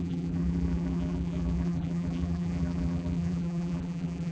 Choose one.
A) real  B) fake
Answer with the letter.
B